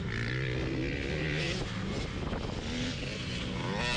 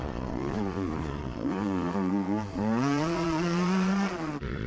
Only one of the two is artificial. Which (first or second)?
second